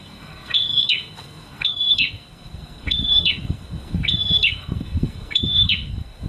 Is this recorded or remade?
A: remade